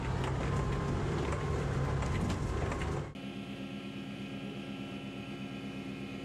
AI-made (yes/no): no